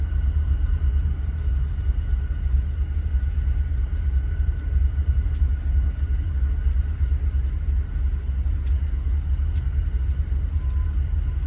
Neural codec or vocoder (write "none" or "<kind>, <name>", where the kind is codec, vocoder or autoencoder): none